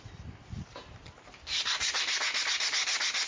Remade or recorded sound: recorded